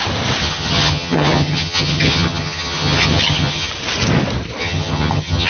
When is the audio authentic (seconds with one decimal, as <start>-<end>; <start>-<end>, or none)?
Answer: 0.0-0.4; 3.7-4.6